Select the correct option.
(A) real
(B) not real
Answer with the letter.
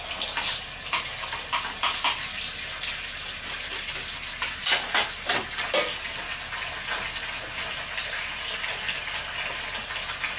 A